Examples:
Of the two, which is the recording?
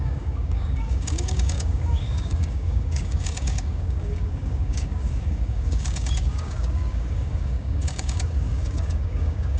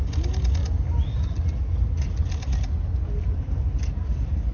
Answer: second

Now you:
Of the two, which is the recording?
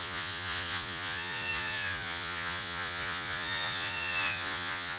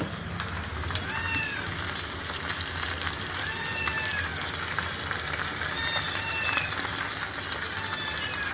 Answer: second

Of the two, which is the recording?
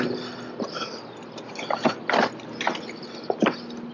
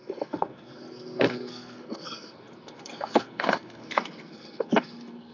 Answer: first